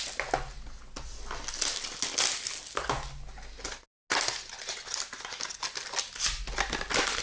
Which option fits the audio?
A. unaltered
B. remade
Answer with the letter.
A